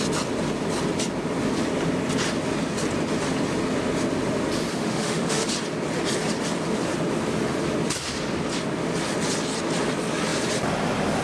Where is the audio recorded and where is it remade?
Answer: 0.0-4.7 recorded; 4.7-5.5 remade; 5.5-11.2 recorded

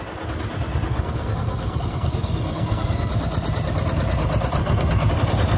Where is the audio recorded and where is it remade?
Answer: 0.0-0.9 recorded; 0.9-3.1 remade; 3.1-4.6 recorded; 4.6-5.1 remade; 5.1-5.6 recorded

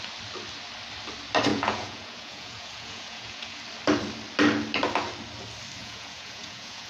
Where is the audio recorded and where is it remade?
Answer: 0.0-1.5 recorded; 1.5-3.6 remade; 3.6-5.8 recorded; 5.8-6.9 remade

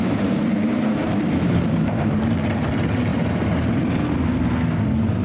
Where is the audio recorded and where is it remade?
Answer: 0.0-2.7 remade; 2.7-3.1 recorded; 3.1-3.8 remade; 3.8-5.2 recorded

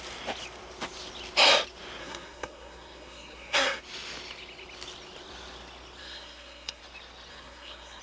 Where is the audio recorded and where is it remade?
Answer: 0.0-2.0 recorded; 2.0-3.8 remade; 3.8-6.0 recorded; 6.0-6.8 remade; 6.8-7.3 recorded; 7.3-8.0 remade

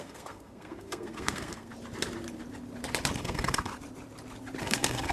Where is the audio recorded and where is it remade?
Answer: 0.0-1.7 remade; 1.7-3.2 recorded; 3.2-3.7 remade; 3.7-4.6 recorded; 4.6-5.1 remade

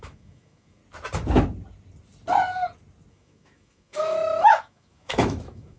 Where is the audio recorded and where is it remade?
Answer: 0.0-0.8 remade; 0.8-3.1 recorded; 3.1-5.8 remade

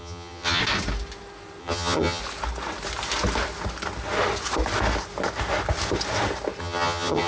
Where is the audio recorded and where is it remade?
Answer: 0.0-0.6 remade; 0.6-1.6 recorded; 1.6-2.2 remade; 2.2-6.6 recorded; 6.6-7.3 remade